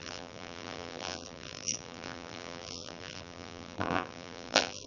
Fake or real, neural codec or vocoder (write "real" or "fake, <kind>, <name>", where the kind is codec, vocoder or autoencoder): fake, vocoder, BigVGAN v2